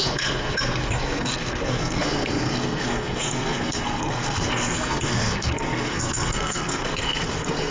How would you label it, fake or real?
fake